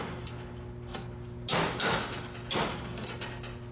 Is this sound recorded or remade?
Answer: recorded